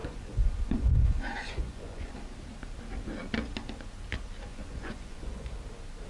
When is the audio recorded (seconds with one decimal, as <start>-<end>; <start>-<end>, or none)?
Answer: 2.1-4.5; 5.5-6.1